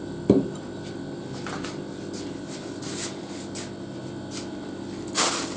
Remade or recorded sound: recorded